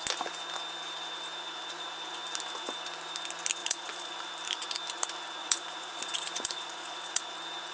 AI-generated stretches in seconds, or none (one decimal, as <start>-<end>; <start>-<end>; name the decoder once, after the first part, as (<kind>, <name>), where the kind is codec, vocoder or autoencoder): 3.6-4.1 (vocoder, Vocos); 5.4-7.2